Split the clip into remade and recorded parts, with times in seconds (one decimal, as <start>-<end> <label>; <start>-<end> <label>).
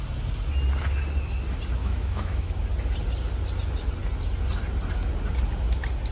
0.0-1.8 recorded; 1.8-2.5 remade; 2.5-6.1 recorded